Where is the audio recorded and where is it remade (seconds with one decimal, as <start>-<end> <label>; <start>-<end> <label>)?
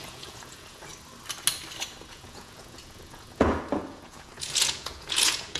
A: 0.0-0.9 remade; 0.9-2.1 recorded; 2.1-5.6 remade